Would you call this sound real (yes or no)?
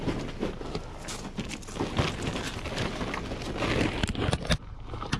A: yes